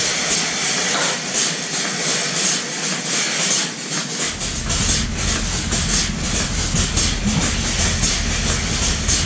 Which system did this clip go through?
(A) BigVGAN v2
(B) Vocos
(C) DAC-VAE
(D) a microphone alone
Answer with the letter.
D